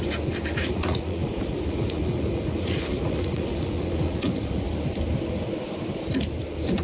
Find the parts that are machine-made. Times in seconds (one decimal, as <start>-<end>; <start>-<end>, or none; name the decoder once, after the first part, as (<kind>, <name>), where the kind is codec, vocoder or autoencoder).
0.6-4.7 (vocoder, Vocos)